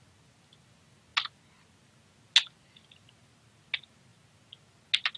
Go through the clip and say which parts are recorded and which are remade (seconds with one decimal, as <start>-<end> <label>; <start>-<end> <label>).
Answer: 0.0-5.2 recorded